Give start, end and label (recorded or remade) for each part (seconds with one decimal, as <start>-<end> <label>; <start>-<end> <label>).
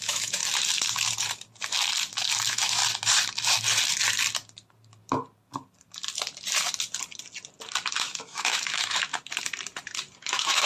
0.0-0.4 remade; 0.4-2.4 recorded; 2.4-2.8 remade; 2.8-7.9 recorded; 7.9-9.1 remade; 9.1-10.2 recorded; 10.2-10.7 remade